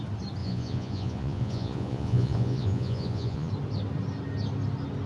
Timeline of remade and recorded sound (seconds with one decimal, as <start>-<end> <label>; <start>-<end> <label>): 0.0-0.4 recorded; 0.4-3.5 remade; 3.5-5.1 recorded